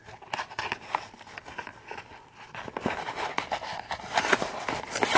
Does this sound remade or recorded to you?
recorded